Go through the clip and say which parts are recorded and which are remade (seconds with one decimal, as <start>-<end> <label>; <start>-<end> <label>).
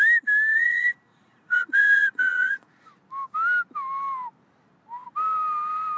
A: 0.0-0.5 recorded; 0.5-2.9 remade; 2.9-6.0 recorded